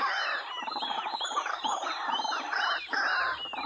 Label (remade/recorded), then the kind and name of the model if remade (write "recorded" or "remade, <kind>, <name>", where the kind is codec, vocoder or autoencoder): remade, vocoder, BigVGAN v2